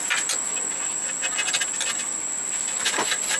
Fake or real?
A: real